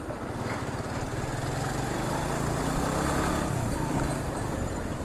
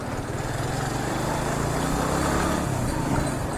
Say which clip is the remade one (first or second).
first